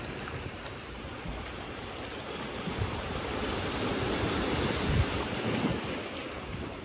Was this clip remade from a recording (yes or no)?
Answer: yes